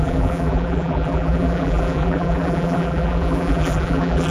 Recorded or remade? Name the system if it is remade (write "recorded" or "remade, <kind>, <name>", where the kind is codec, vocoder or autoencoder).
remade, vocoder, BigVGAN v2